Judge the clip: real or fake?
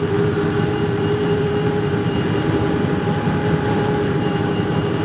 fake